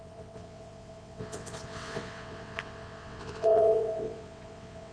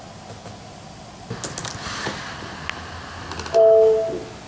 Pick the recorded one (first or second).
second